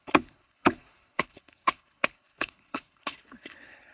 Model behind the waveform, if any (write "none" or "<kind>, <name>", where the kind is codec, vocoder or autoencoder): codec, HILCodec